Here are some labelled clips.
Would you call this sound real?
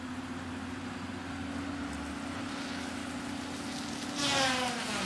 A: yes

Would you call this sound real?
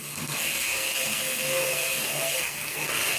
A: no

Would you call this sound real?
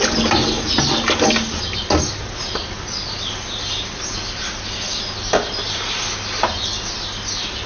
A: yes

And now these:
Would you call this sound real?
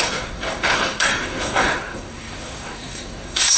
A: no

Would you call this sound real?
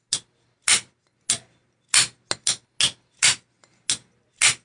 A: yes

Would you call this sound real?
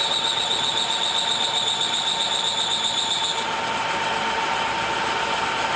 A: yes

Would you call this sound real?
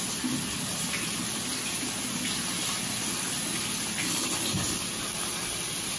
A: yes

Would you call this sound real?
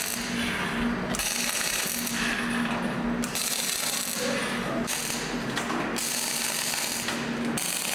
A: yes